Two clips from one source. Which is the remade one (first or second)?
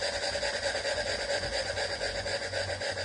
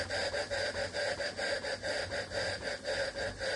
first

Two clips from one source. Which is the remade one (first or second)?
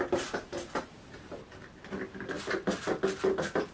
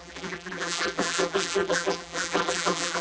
second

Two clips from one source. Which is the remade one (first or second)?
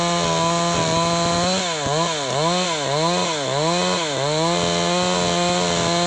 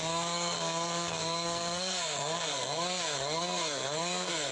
second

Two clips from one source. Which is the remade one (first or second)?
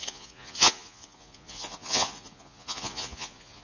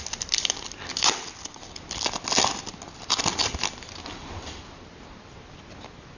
first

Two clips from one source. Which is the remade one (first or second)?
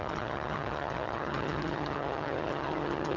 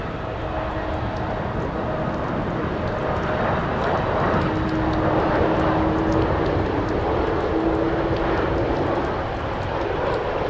first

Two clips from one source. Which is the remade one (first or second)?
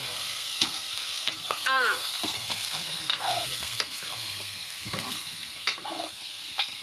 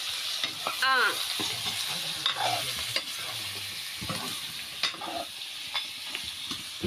first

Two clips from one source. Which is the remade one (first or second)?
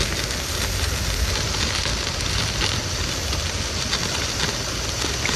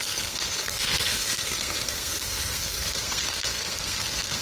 second